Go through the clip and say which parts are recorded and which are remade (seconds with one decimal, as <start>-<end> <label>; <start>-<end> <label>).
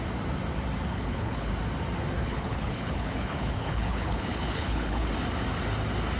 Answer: 0.0-0.9 recorded; 0.9-1.5 remade; 1.5-2.2 recorded; 2.2-5.1 remade; 5.1-6.2 recorded